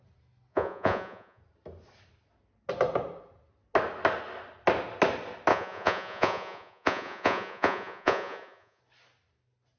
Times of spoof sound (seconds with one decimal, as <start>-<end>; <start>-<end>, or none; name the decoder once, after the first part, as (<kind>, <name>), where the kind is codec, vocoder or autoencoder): 0.5-1.4 (vocoder, Vocos); 5.5-8.8